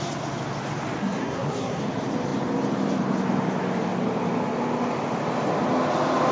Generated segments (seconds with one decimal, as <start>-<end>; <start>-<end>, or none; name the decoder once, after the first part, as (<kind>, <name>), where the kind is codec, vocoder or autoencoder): 1.0-1.8 (codec, SNAC)